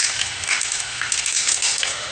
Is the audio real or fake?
fake